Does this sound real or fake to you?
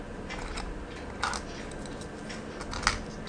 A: real